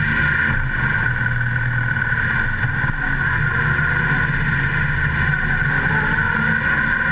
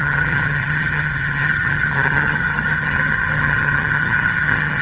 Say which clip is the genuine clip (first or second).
first